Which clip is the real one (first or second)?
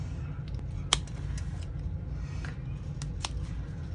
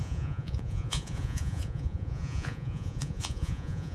first